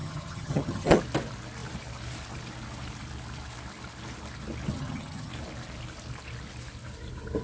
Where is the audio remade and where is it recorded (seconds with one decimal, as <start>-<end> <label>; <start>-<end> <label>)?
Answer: 0.0-1.0 remade; 1.0-4.7 recorded; 4.7-5.3 remade; 5.3-7.4 recorded